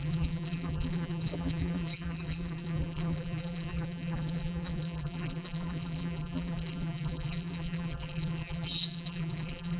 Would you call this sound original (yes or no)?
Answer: no